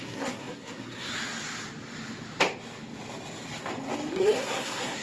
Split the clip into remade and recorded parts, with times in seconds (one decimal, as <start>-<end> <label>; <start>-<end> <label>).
0.0-1.1 remade; 1.1-4.1 recorded; 4.1-5.0 remade